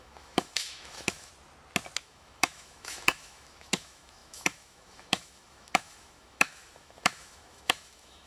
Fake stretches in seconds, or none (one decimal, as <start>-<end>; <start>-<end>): 0.0-1.3; 2.0-8.3